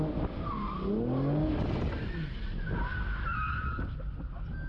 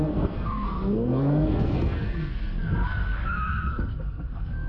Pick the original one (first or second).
first